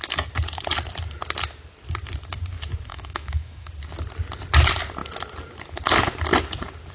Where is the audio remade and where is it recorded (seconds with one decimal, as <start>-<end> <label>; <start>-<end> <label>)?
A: 0.0-2.9 recorded; 2.9-3.7 remade; 3.7-6.9 recorded